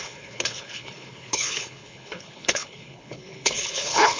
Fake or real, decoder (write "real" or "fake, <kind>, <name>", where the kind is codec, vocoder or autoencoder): fake, codec, HILCodec